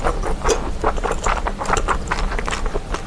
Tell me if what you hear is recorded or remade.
recorded